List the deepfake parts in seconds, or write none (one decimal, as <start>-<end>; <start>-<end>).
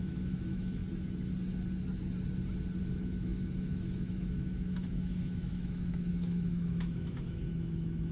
0.0-0.8; 2.8-8.1